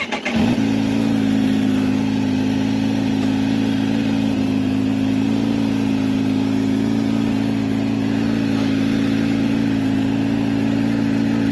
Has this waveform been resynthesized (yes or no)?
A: no